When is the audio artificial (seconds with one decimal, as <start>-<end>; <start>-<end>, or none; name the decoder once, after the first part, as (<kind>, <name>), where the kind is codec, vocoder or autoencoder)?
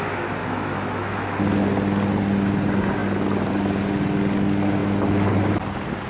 0.4-1.4 (autoencoder, DAC-VAE)